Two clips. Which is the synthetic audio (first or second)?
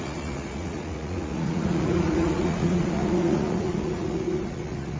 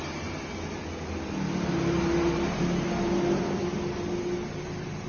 first